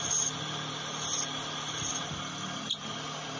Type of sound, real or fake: real